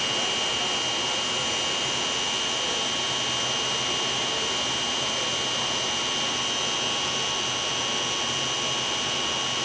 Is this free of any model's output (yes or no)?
yes